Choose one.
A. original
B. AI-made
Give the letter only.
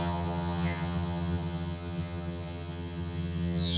B